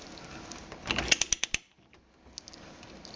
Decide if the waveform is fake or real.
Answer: real